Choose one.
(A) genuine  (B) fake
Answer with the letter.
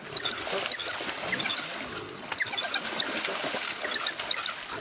A